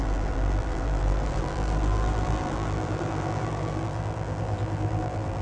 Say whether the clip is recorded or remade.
remade